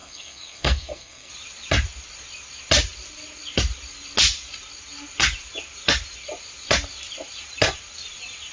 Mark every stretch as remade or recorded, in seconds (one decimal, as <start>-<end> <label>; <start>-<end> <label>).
0.0-1.3 remade; 1.3-8.5 recorded